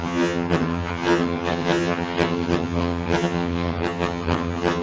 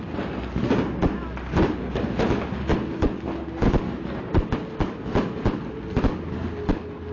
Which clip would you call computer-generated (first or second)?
first